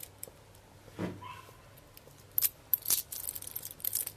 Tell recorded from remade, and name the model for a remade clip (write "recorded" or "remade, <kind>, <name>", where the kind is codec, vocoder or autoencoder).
recorded